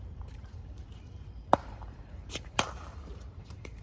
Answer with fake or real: fake